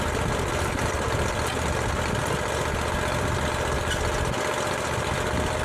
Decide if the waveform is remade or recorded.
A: recorded